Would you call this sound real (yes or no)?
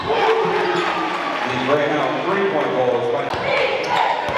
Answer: yes